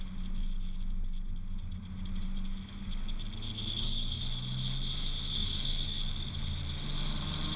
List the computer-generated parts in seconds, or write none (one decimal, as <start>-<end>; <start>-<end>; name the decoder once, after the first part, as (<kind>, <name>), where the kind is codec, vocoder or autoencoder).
5.4-6.0 (codec, SNAC)